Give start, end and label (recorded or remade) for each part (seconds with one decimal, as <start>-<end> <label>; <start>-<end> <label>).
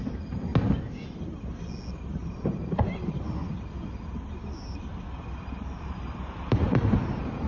0.0-0.5 remade; 0.5-2.0 recorded; 2.0-3.4 remade; 3.4-4.0 recorded; 4.0-4.9 remade; 4.9-5.6 recorded; 5.6-7.5 remade